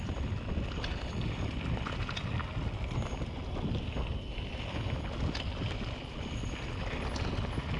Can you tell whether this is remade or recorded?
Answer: recorded